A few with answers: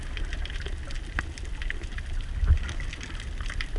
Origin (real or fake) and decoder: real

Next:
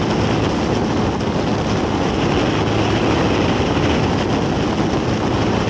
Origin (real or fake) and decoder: real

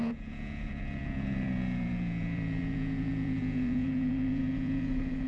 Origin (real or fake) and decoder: fake, vocoder, Vocos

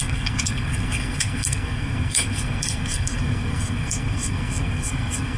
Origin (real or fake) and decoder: fake, codec, SNAC